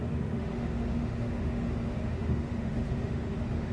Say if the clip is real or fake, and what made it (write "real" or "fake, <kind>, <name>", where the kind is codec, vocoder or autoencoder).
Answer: fake, autoencoder, DAC-VAE